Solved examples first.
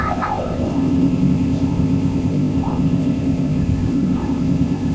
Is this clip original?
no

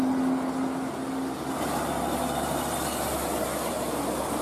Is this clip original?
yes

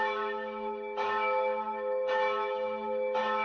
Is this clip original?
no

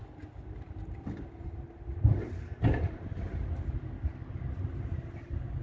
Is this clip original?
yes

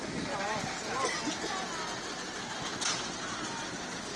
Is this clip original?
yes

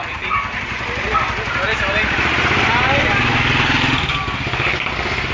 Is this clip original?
yes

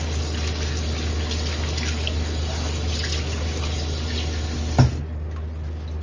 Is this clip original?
yes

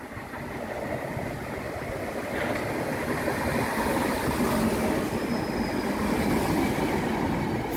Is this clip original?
yes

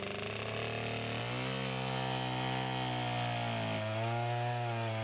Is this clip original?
yes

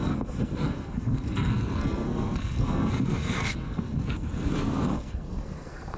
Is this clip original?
no